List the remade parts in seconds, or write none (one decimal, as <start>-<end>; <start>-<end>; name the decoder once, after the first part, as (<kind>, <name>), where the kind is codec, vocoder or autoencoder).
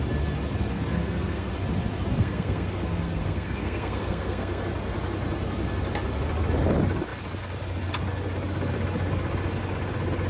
0.7-1.5 (codec, SNAC); 2.2-4.6